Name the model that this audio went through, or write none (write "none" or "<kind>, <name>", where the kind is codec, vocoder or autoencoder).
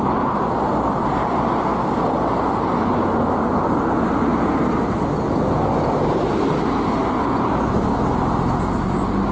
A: none